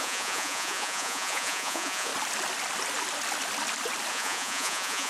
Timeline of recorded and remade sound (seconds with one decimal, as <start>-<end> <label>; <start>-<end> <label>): 0.0-2.1 remade; 2.1-4.1 recorded; 4.1-5.1 remade